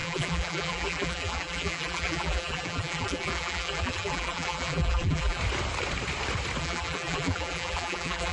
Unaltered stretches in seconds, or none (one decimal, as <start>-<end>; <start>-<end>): 5.4-6.6